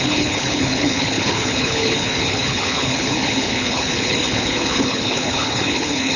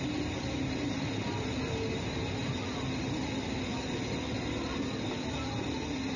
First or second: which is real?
second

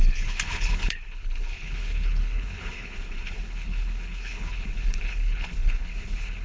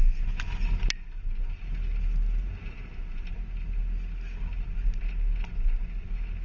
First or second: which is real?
second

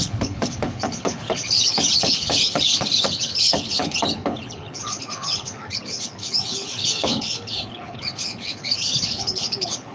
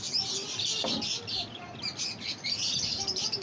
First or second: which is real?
second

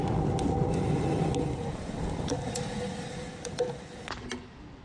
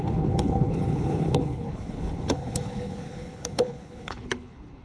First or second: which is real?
first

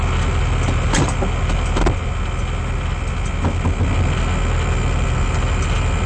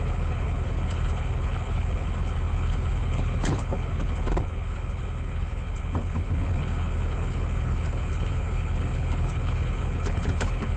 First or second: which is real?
first